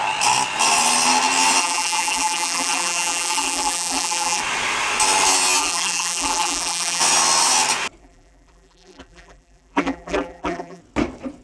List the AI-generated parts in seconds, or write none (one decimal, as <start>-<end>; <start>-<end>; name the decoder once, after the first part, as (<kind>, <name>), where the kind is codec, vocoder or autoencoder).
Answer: 1.6-4.4 (vocoder, BigVGAN v2); 5.6-7.0; 8.0-10.8